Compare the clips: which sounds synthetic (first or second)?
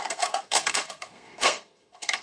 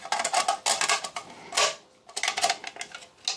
first